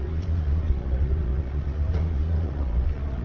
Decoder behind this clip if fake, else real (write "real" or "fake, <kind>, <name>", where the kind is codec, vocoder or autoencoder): fake, vocoder, Vocos